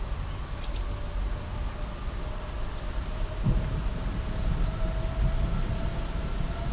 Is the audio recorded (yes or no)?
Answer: yes